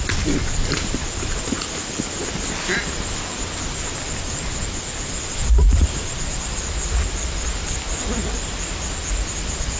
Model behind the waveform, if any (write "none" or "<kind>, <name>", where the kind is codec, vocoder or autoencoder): none